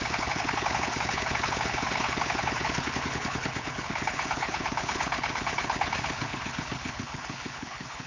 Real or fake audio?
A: fake